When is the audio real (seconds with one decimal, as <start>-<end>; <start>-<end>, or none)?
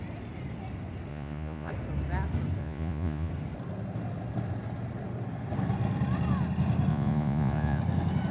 0.0-1.1; 1.7-2.6; 3.3-6.9; 7.8-8.3